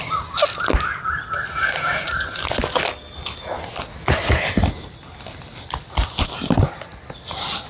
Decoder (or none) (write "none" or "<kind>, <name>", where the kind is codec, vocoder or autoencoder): none